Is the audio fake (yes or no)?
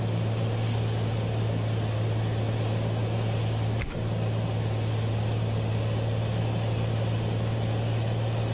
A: no